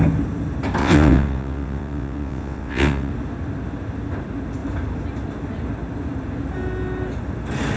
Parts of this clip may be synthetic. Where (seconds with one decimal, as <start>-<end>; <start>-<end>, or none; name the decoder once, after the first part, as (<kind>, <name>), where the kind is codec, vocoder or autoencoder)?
0.8-3.1 (vocoder, WaveNeXt)

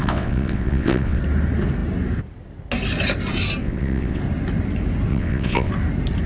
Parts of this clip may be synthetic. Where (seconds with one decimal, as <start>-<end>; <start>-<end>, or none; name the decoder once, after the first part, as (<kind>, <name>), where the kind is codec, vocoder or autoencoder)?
0.0-1.2 (vocoder, WaveNeXt); 3.6-4.2; 5.1-5.7

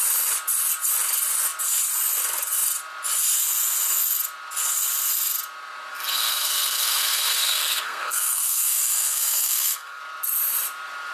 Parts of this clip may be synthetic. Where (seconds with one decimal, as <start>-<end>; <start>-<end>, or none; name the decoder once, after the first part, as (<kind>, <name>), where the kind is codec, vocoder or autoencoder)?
5.9-10.0 (codec, SNAC)

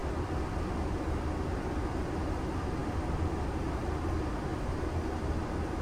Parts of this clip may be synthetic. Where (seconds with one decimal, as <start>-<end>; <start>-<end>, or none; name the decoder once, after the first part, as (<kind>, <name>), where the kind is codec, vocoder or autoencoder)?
2.8-3.8 (vocoder, BigVGAN v2); 4.5-5.2

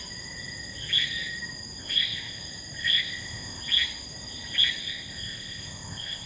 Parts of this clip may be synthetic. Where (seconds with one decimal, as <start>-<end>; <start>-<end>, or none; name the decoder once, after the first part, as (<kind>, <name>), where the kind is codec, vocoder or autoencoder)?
1.8-2.4 (codec, ZipCodec); 2.8-3.6; 4.8-6.3

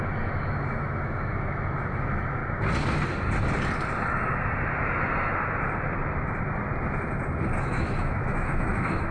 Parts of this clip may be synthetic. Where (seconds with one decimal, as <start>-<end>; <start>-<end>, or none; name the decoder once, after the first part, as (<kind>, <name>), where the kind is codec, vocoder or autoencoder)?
0.0-2.4 (autoencoder, DAC-VAE); 7.6-9.1

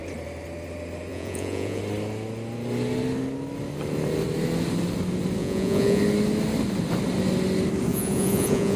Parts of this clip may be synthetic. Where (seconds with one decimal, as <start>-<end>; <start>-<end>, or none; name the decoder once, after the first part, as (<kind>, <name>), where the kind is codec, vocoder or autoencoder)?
1.1-1.8 (vocoder, Vocos); 5.4-6.0; 7.9-8.8

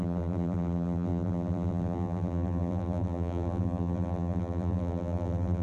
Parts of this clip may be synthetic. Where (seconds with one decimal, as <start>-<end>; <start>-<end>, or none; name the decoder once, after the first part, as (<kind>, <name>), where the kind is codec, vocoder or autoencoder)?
0.0-5.6 (vocoder, BigVGAN v2)